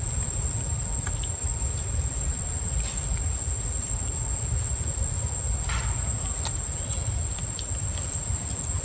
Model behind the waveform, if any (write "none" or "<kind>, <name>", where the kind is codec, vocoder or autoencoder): none